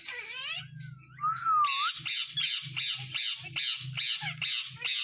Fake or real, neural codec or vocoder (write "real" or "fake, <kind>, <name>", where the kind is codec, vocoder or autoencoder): real